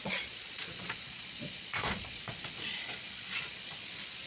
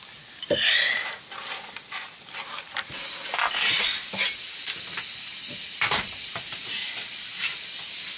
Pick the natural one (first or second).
second